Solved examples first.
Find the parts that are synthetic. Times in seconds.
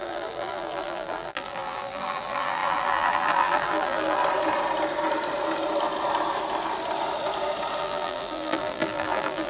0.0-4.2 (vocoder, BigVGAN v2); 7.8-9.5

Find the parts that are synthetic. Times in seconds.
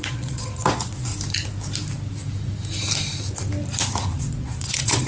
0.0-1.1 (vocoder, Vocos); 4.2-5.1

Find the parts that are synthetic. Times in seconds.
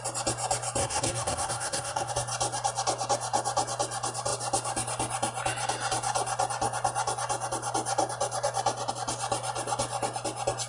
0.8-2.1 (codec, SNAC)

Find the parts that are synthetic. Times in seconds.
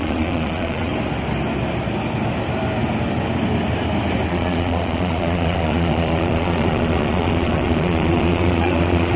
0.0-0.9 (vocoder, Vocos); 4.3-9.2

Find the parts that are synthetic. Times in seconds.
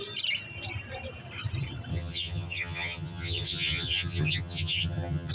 1.9-5.3 (vocoder, HiFi-GAN)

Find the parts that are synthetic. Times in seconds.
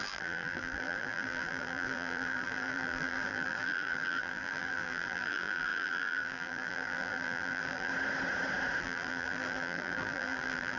0.0-7.9 (vocoder, BigVGAN v2); 8.8-10.8